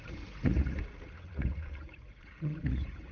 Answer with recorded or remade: remade